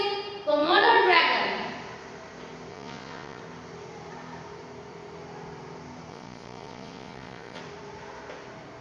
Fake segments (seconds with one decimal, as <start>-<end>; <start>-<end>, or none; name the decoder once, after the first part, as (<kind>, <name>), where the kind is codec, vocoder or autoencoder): 0.6-1.2 (vocoder, Vocos); 2.7-3.4; 6.1-7.6